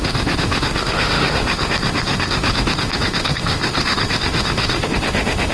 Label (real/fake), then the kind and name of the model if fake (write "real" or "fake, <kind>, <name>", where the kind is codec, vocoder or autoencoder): fake, autoencoder, DAC-VAE